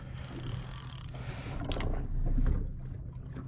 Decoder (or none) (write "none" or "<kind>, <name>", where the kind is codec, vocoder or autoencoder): none